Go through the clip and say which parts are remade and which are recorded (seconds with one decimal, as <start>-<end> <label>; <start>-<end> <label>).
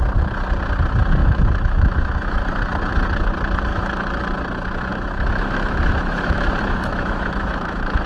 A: 0.0-1.2 recorded; 1.2-2.5 remade; 2.5-3.7 recorded; 3.7-4.2 remade; 4.2-4.9 recorded; 4.9-8.1 remade